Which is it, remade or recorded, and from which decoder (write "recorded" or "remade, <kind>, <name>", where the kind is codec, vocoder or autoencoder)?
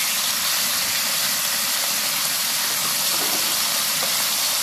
recorded